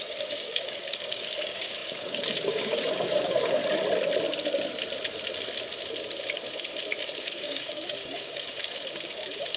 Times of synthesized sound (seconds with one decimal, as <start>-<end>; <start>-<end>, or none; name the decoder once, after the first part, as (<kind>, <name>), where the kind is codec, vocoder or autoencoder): 0.0-3.6 (codec, DAC); 7.2-9.6